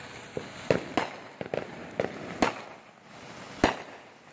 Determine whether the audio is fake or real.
real